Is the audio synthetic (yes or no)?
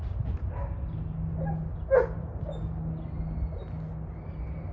no